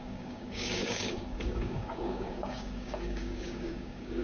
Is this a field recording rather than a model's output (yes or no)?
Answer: no